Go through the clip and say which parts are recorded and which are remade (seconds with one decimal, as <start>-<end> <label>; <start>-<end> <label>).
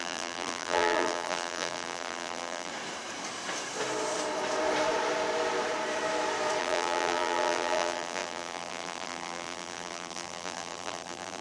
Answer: 0.0-2.7 remade; 2.7-6.6 recorded; 6.6-11.4 remade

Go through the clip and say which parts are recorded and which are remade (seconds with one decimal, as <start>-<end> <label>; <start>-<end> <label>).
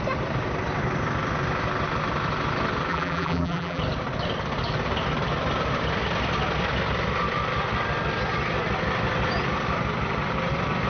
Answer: 0.0-2.9 recorded; 2.9-3.8 remade; 3.8-10.9 recorded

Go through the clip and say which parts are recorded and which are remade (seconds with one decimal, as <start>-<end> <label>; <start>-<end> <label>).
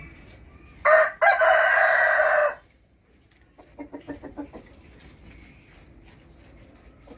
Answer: 0.0-2.4 recorded; 2.4-3.6 remade; 3.6-7.2 recorded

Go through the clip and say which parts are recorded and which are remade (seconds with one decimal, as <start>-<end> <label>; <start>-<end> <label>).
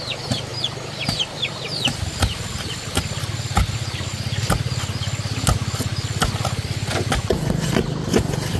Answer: 0.0-0.5 recorded; 0.5-3.3 remade; 3.3-5.9 recorded; 5.9-8.6 remade